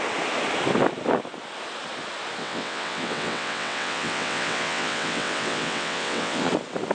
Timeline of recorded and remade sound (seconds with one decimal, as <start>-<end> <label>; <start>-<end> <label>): 0.0-2.4 recorded; 2.4-6.5 remade; 6.5-6.9 recorded